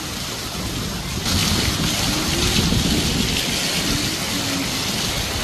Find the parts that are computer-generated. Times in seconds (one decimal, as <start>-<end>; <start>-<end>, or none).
none